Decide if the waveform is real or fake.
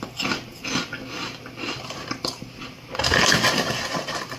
real